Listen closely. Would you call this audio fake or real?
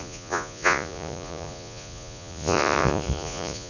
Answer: fake